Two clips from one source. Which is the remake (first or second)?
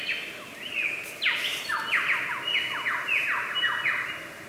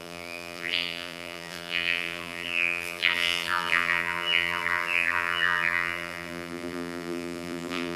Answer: second